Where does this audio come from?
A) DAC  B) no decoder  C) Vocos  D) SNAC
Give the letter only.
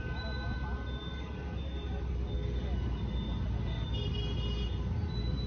B